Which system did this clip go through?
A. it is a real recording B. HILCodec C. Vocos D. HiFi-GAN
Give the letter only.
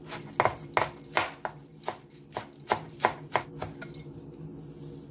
A